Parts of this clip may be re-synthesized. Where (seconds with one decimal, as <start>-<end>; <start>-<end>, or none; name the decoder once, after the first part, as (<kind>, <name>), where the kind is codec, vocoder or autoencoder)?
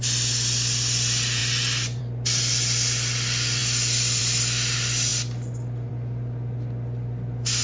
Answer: none